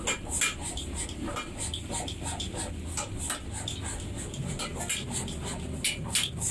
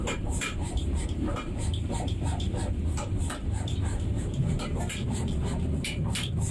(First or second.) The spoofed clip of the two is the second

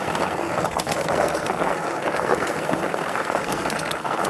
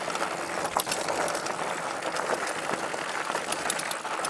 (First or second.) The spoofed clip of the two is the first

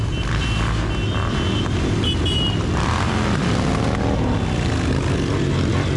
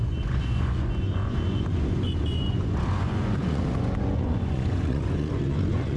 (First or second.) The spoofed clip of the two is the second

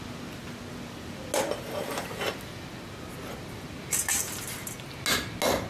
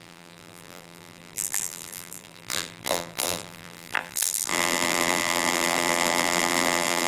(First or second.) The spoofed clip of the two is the second